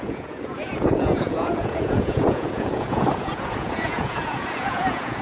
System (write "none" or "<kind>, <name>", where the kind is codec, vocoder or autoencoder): vocoder, Vocos